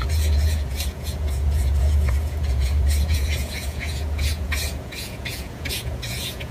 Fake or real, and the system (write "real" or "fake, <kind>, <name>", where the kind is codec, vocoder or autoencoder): fake, vocoder, Vocos